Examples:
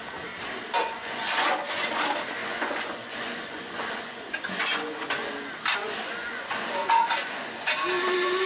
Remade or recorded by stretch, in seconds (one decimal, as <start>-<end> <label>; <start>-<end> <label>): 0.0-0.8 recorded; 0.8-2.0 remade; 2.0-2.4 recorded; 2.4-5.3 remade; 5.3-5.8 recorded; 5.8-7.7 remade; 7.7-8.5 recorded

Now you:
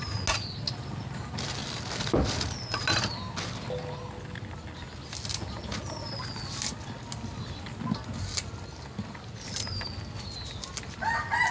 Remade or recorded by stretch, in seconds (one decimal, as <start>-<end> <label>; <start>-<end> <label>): 0.0-11.5 recorded

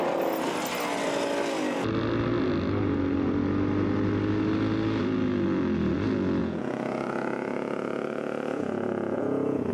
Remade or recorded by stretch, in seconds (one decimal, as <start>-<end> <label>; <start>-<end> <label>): 0.0-6.4 recorded; 6.4-9.7 remade